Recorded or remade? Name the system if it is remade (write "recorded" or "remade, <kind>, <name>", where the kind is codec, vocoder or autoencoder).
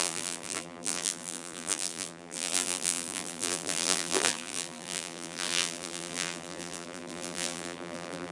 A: remade, vocoder, BigVGAN v2